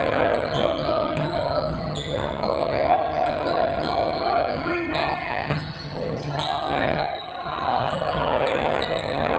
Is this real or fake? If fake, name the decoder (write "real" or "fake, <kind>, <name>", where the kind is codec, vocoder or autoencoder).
fake, vocoder, HiFi-GAN